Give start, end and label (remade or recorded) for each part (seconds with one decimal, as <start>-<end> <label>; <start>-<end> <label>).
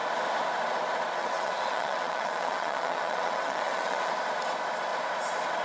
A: 0.0-1.2 recorded; 1.2-4.1 remade; 4.1-5.6 recorded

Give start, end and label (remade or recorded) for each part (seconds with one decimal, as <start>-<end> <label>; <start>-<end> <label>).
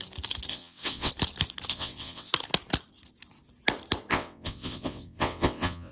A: 0.0-0.5 recorded; 0.5-1.1 remade; 1.1-1.7 recorded; 1.7-2.3 remade; 2.3-4.1 recorded; 4.1-5.9 remade